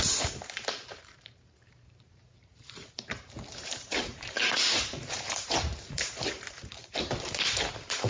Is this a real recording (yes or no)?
no